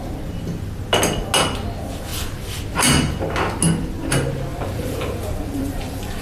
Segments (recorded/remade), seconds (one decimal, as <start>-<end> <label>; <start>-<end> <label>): 0.0-4.5 recorded; 4.5-6.2 remade